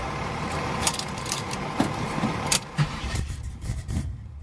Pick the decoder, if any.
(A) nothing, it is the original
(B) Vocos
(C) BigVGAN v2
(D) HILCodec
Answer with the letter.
C